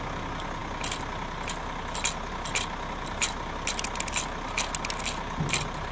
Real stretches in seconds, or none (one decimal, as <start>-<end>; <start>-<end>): 0.0-5.9